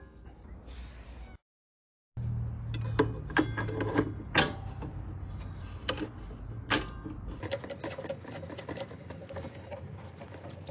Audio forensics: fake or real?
real